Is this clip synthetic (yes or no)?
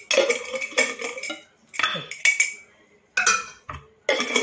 no